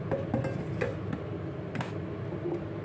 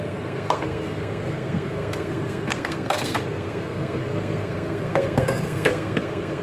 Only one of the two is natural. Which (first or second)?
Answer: first